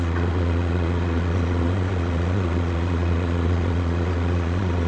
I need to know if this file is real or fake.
fake